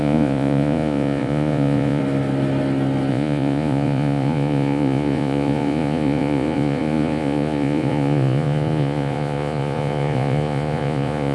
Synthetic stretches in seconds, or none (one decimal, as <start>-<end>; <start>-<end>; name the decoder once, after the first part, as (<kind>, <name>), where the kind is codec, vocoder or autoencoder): 0.0-2.0 (vocoder, Vocos); 3.1-11.3